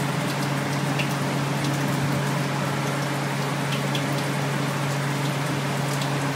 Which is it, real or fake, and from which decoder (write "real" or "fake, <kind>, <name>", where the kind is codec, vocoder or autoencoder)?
real